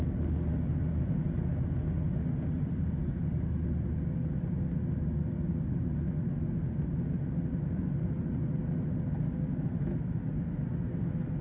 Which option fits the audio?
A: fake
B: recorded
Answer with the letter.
B